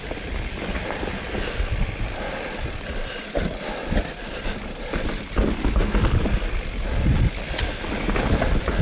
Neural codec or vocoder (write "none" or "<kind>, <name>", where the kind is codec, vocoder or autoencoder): none